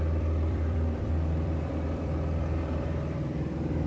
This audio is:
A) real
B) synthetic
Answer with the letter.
B